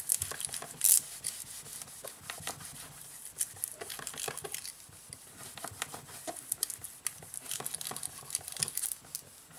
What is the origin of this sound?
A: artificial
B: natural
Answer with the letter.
B